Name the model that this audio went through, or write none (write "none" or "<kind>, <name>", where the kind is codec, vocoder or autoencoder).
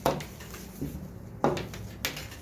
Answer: none